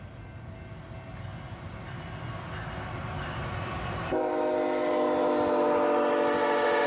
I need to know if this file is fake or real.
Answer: real